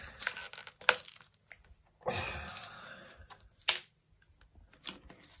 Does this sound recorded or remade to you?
recorded